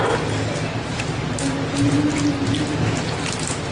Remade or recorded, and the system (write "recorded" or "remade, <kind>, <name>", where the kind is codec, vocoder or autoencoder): recorded